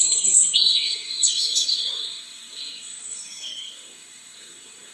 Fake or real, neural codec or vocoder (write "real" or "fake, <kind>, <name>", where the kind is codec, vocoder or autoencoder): fake, codec, SNAC